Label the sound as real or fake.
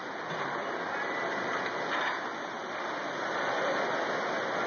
real